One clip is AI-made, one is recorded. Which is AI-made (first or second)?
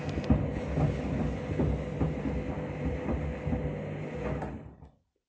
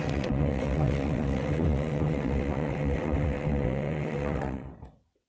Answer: second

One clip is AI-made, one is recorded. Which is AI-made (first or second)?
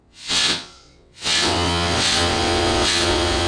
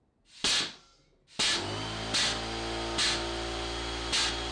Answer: first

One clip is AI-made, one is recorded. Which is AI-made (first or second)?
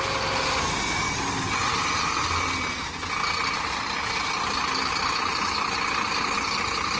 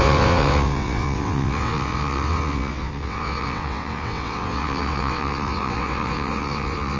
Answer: second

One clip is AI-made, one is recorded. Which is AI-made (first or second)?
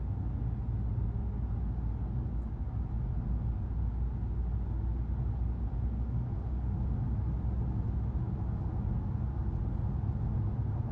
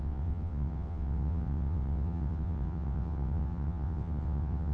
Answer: second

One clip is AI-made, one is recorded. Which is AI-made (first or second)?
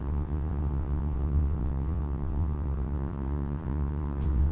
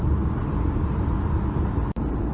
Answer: first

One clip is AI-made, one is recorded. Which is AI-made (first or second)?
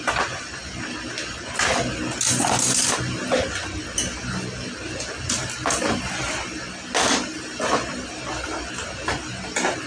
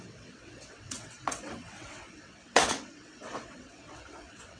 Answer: second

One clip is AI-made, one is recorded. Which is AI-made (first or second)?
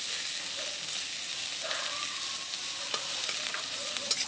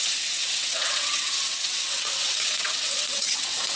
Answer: second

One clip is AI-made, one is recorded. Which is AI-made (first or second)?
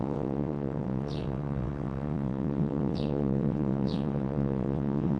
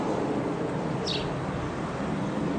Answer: first